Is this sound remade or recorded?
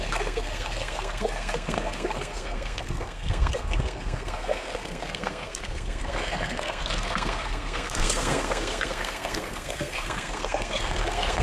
remade